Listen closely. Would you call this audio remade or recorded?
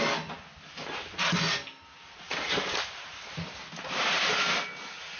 recorded